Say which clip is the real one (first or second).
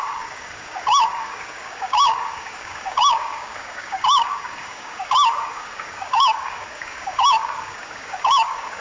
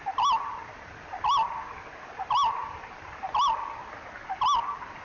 second